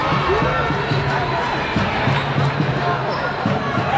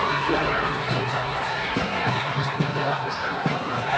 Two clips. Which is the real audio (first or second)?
first